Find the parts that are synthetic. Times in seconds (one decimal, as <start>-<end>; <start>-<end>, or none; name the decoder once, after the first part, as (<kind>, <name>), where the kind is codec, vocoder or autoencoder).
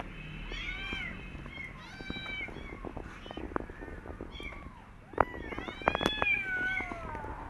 none